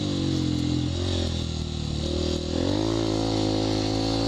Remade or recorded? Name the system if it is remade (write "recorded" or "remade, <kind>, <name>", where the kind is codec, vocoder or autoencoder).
recorded